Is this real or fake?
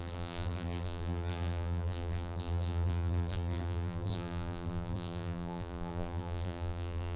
fake